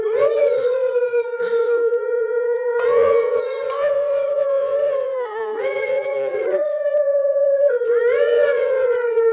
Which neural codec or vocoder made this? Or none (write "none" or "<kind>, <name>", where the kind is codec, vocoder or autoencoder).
vocoder, Vocos